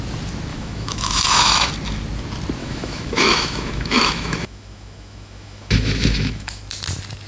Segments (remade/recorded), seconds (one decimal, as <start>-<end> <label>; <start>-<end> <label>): 0.0-0.5 recorded; 0.5-1.7 remade; 1.7-2.6 recorded; 2.6-6.6 remade; 6.6-7.3 recorded